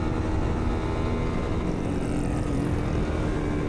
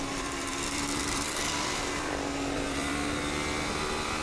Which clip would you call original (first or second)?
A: first